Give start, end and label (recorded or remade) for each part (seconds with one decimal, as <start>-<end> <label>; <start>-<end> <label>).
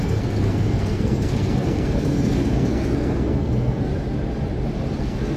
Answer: 0.0-3.9 remade; 3.9-5.0 recorded; 5.0-5.4 remade